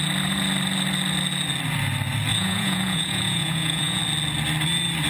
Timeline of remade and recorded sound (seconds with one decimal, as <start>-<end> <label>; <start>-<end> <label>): 0.0-2.3 recorded; 2.3-4.0 remade; 4.0-5.1 recorded